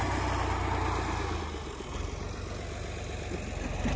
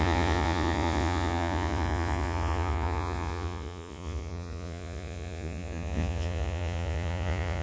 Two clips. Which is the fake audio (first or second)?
second